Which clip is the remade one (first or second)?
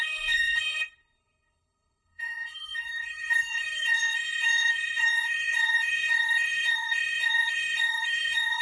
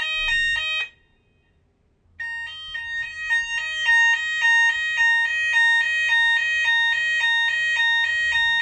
first